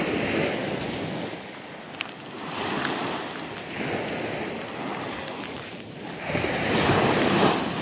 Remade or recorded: recorded